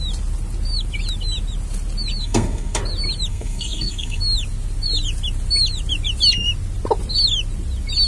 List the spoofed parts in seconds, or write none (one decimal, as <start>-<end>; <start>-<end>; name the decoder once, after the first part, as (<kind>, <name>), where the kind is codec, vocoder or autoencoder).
2.2-2.8 (codec, SNAC); 3.3-4.2